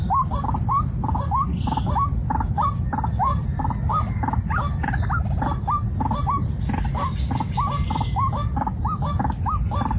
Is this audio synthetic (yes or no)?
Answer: no